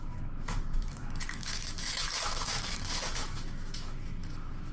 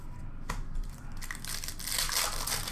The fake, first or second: first